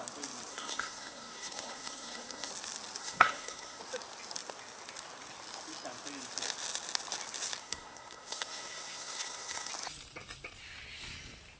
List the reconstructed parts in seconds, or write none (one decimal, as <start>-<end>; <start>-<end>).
0.5-2.5; 3.0-3.8; 7.6-9.7